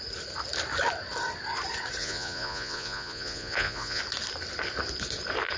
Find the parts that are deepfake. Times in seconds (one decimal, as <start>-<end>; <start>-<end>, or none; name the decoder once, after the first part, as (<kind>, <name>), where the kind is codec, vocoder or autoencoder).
2.0-4.0 (vocoder, Vocos)